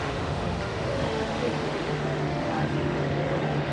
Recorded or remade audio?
remade